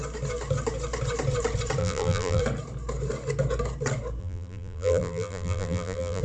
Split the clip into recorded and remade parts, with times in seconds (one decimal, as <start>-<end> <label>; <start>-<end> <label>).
0.0-1.8 recorded; 1.8-2.4 remade; 2.4-4.2 recorded; 4.2-6.2 remade